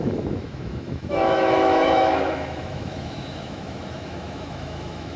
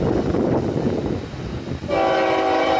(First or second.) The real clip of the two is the second